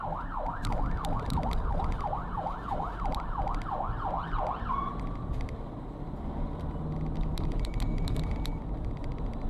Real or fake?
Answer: fake